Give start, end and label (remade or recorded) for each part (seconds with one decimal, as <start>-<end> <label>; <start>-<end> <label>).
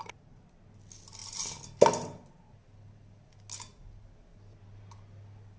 0.0-5.6 recorded